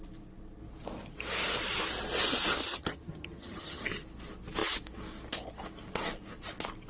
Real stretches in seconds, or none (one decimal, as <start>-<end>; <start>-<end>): 0.0-2.6; 3.8-6.9